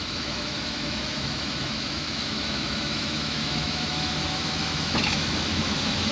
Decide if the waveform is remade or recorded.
remade